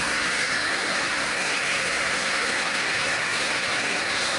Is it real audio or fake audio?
fake